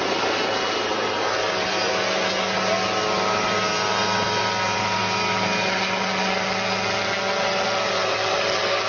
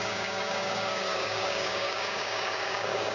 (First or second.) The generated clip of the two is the second